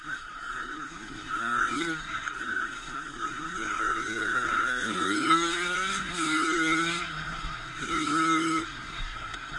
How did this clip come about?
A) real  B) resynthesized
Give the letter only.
B